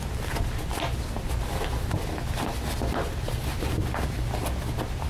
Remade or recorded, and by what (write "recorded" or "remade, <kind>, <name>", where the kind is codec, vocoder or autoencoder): recorded